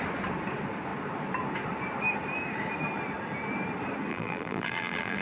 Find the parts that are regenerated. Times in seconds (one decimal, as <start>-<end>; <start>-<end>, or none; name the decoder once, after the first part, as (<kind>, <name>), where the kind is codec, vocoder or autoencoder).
4.1-5.2 (vocoder, BigVGAN v2)

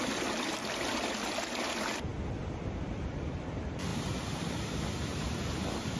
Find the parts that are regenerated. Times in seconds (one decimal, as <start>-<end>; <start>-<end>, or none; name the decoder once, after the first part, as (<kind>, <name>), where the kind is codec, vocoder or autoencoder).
3.9-6.0 (vocoder, BigVGAN v2)

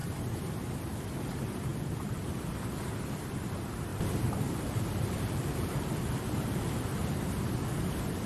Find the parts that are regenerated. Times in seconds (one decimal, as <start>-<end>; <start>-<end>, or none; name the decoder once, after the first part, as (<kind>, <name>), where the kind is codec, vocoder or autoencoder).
0.0-1.0 (vocoder, BigVGAN v2); 1.7-2.5; 3.9-7.3

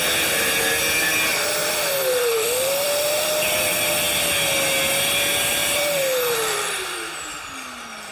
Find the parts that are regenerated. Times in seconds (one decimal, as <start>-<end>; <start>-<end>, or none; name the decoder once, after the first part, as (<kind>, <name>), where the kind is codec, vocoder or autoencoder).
1.6-3.8 (vocoder, BigVGAN v2); 5.6-7.5

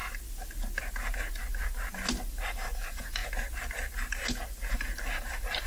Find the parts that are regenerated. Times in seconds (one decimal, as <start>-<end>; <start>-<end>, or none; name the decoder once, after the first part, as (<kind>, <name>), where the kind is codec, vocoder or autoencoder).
2.3-3.2 (vocoder, BigVGAN v2); 4.7-5.7

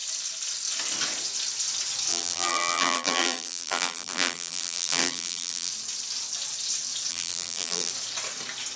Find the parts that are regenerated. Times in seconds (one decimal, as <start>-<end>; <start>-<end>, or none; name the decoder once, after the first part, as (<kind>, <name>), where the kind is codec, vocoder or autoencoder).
2.1-5.7 (vocoder, BigVGAN v2); 7.1-7.9